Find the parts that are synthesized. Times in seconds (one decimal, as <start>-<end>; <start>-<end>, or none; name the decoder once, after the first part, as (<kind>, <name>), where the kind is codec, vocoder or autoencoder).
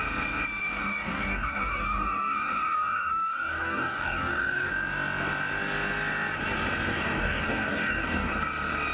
0.6-4.7 (codec, DAC); 6.9-8.3